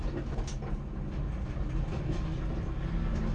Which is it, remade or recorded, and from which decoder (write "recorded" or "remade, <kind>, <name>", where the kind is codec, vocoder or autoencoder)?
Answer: recorded